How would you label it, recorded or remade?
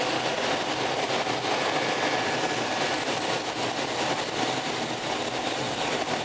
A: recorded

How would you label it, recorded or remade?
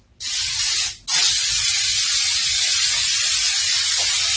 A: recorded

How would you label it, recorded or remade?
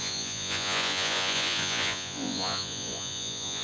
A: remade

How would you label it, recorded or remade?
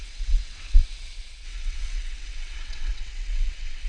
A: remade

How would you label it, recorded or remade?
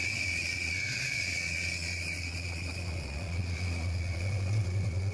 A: remade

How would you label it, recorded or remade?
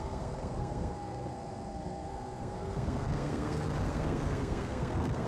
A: remade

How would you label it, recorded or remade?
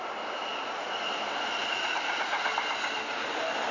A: recorded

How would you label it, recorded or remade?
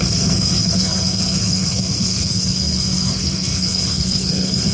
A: remade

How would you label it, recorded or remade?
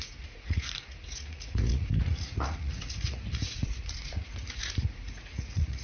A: remade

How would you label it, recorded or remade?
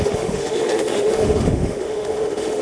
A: remade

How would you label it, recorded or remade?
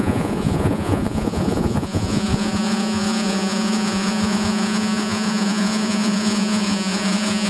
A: remade